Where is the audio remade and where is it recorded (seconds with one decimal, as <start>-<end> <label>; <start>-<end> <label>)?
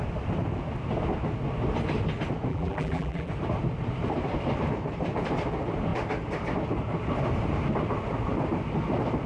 0.0-2.5 recorded; 2.5-3.3 remade; 3.3-9.3 recorded